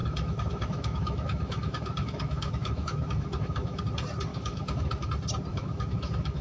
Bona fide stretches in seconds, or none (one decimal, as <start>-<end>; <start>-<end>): 3.8-4.3; 5.1-5.5